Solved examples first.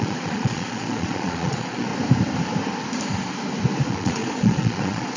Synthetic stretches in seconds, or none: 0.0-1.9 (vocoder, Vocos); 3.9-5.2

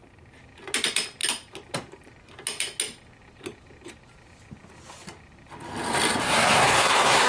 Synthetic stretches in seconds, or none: 6.2-7.3 (codec, SNAC)

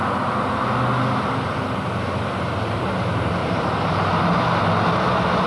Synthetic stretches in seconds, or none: 3.4-4.2 (vocoder, BigVGAN v2)

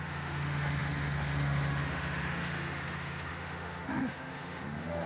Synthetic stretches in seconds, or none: 0.0-5.1 (autoencoder, DAC-VAE)

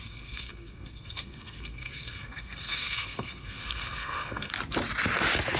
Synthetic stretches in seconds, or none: 0.0-4.5 (codec, SNAC)

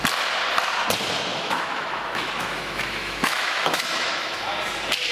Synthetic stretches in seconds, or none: 1.3-4.4 (autoencoder, DAC-VAE)